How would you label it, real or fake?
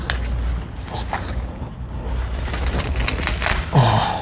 real